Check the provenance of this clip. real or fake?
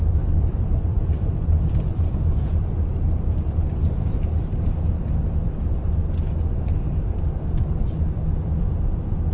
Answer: fake